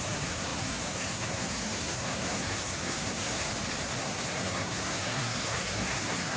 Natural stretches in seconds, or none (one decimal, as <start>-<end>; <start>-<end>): 3.5-4.0